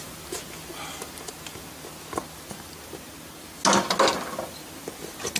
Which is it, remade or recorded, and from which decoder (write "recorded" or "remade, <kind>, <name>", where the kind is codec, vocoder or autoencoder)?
recorded